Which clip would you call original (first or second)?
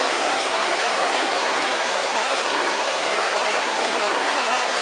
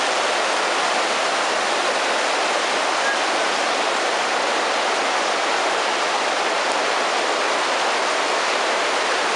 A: second